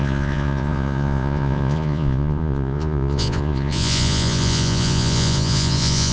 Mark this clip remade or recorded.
remade